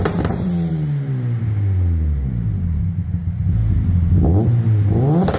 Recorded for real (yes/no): yes